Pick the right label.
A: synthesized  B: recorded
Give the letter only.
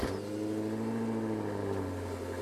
B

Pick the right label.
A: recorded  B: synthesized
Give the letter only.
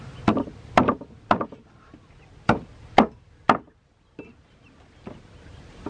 A